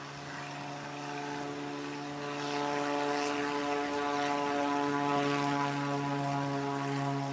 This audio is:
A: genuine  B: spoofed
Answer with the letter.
A